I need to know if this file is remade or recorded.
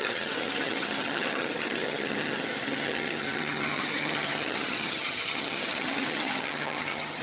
remade